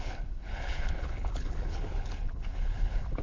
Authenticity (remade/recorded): remade